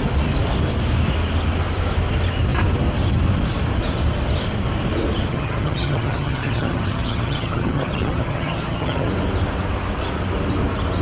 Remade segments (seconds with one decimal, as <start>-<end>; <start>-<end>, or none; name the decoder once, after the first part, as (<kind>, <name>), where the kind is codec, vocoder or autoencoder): 5.3-9.1 (vocoder, HiFi-GAN)